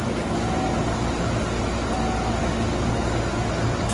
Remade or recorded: recorded